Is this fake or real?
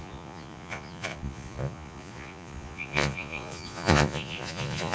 fake